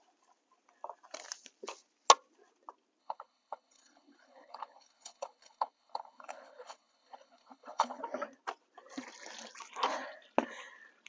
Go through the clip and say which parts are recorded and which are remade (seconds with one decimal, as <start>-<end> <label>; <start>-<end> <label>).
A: 0.0-3.0 recorded; 3.0-8.0 remade; 8.0-11.1 recorded

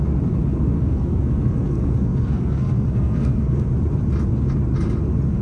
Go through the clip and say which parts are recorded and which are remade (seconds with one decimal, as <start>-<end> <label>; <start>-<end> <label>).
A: 0.0-0.5 recorded; 0.5-3.7 remade; 3.7-5.4 recorded

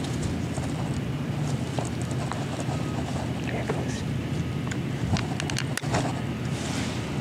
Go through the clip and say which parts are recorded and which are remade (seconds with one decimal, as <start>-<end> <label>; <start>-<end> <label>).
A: 0.0-7.2 recorded

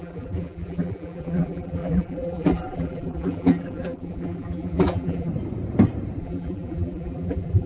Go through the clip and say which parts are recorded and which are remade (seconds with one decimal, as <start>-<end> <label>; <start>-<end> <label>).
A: 0.0-5.3 remade; 5.3-6.2 recorded; 6.2-7.7 remade